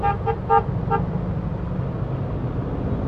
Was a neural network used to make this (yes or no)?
no